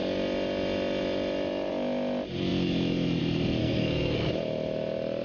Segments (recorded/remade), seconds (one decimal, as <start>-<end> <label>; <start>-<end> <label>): 0.0-3.6 recorded; 3.6-4.3 remade; 4.3-5.2 recorded